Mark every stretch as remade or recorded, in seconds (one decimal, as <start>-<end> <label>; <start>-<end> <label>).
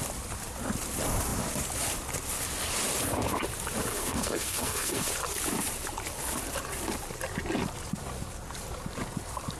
0.0-3.9 recorded; 3.9-5.1 remade; 5.1-9.6 recorded